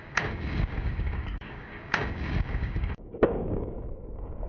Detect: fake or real fake